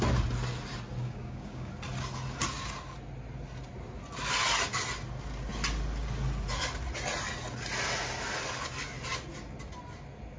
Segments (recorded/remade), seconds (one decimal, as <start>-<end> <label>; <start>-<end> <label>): 0.0-1.0 recorded; 1.0-1.7 remade; 1.7-10.4 recorded